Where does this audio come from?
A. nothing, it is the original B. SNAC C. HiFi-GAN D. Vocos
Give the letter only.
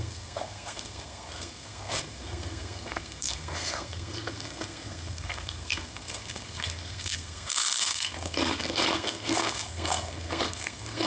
B